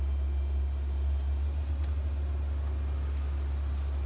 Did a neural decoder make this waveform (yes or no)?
no